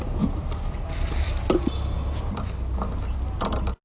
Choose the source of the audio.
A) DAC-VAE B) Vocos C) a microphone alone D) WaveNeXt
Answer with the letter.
C